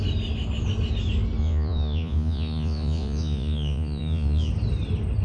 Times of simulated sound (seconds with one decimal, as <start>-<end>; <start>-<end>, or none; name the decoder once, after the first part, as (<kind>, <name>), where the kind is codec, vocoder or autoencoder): 1.4-4.5 (vocoder, Vocos)